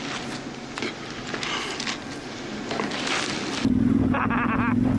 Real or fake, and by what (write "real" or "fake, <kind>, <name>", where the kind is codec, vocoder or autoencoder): real